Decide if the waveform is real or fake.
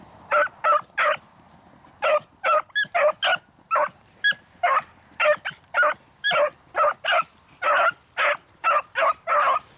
real